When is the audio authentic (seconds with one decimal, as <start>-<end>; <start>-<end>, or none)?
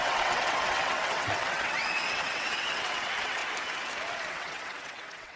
3.4-4.3